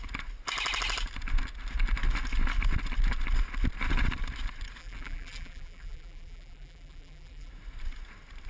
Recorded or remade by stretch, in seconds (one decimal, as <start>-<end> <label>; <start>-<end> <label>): 0.0-4.8 recorded; 4.8-7.5 remade; 7.5-8.5 recorded